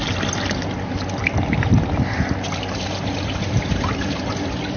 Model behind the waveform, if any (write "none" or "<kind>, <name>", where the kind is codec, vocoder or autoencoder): none